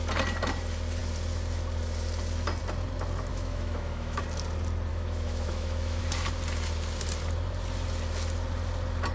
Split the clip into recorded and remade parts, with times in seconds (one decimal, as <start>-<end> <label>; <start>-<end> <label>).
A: 0.0-3.3 recorded; 3.3-4.2 remade; 4.2-4.9 recorded; 4.9-6.0 remade; 6.0-9.1 recorded